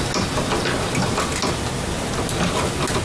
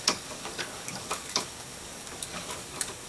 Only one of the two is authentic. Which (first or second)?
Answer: first